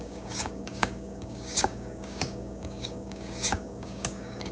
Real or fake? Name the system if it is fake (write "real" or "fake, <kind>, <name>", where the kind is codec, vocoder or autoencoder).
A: fake, codec, DAC